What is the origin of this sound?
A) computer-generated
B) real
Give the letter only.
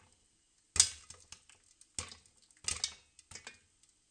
B